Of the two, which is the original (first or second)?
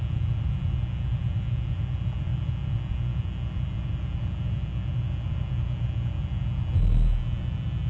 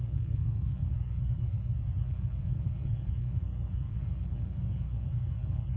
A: first